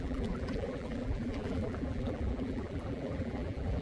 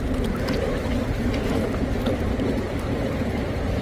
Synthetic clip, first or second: first